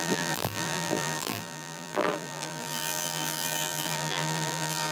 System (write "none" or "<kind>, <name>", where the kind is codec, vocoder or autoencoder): vocoder, BigVGAN v2